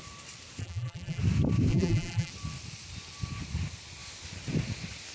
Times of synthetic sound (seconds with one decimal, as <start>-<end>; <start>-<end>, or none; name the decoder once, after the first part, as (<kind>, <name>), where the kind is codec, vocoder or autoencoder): 0.6-1.2 (vocoder, BigVGAN v2); 1.7-2.3